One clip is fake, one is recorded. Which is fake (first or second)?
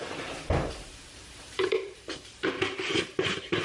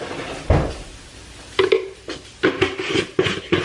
first